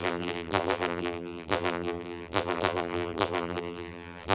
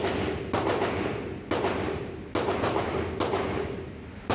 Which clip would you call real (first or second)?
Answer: second